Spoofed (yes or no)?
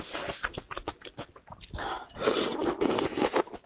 no